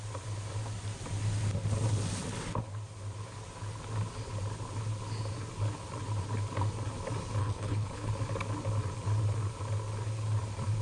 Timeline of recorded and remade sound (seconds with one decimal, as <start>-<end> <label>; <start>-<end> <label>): 0.0-7.4 recorded; 7.4-8.1 remade; 8.1-10.8 recorded